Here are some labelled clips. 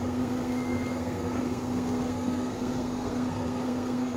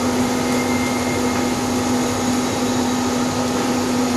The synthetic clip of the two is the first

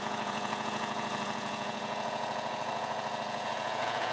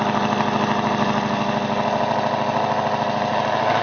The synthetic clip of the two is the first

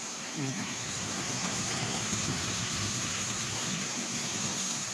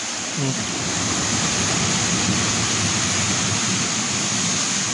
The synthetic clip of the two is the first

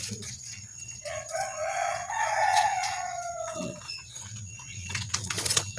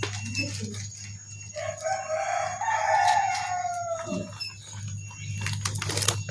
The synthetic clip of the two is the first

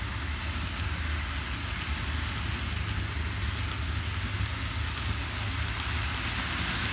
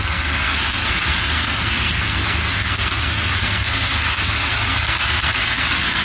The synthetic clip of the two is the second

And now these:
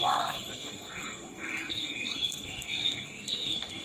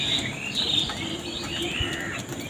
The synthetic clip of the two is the first